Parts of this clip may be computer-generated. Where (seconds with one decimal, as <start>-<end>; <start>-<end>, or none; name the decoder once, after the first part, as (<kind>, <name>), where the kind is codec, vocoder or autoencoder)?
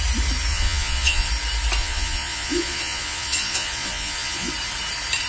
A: 0.5-1.3 (vocoder, Vocos); 1.8-4.5